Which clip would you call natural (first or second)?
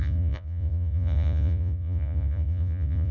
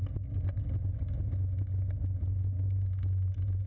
second